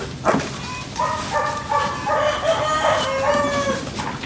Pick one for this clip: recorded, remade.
recorded